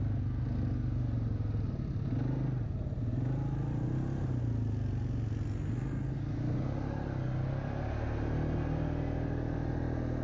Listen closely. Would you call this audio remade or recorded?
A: recorded